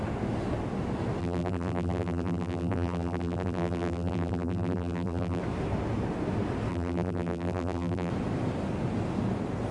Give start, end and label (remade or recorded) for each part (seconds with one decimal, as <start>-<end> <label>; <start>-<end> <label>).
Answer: 0.0-1.2 recorded; 1.2-5.4 remade; 5.4-6.7 recorded; 6.7-8.1 remade; 8.1-9.7 recorded